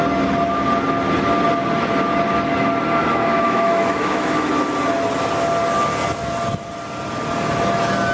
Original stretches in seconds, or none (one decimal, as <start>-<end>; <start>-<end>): 0.0-3.0; 4.5-8.1